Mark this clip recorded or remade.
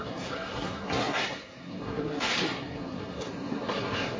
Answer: remade